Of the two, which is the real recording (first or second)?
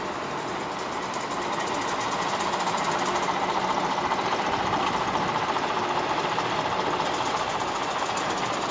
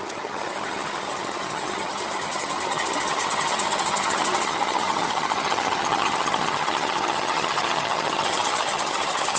first